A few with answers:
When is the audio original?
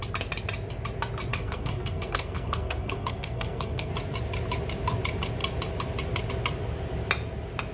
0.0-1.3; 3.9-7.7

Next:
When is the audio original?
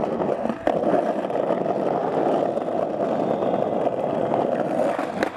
0.0-5.4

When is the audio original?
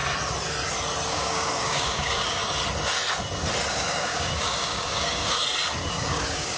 0.0-1.1; 2.4-3.7; 5.4-5.9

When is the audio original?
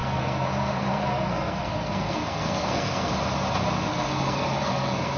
3.1-3.9